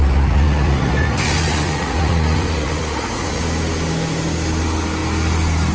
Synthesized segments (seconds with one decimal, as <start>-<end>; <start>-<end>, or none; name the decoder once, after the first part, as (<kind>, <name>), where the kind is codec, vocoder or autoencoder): 0.0-3.4 (vocoder, Vocos)